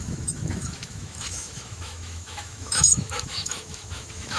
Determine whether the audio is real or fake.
fake